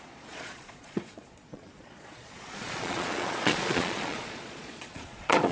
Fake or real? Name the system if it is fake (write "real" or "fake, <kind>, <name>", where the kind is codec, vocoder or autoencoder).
fake, vocoder, Vocos